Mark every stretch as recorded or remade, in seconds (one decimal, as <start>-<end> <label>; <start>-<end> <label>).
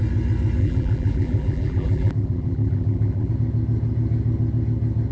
0.0-0.6 recorded; 0.6-3.3 remade; 3.3-5.1 recorded